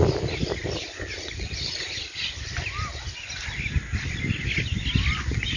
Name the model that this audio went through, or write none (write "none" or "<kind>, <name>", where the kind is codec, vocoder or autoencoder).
none